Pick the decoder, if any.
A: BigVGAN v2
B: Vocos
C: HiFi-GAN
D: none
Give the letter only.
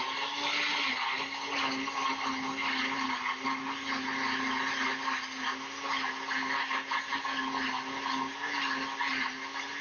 D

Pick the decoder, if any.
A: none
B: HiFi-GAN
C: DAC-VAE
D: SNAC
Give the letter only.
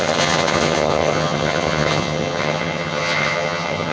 B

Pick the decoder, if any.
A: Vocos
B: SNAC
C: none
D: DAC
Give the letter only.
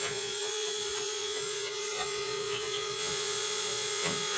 A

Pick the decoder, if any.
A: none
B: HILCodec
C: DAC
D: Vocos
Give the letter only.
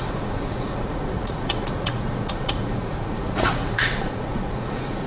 D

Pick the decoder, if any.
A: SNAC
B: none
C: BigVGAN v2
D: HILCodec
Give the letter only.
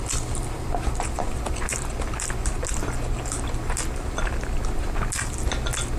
B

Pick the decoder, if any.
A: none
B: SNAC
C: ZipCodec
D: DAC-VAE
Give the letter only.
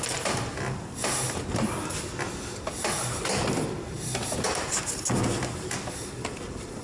A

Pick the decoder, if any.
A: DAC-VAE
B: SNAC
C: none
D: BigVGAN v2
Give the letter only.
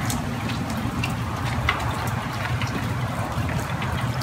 D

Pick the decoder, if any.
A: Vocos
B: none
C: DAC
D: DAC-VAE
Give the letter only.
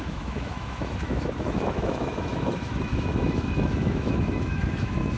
D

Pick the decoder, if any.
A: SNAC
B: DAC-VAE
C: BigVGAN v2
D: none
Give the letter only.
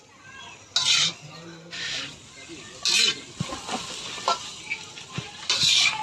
D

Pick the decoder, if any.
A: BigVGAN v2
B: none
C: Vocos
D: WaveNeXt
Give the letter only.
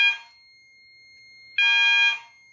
B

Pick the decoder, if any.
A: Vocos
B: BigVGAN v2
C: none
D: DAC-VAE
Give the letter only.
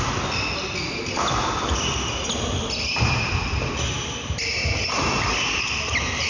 C